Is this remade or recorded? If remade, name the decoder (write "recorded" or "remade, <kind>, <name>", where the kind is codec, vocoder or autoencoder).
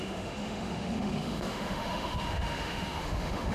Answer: remade, autoencoder, DAC-VAE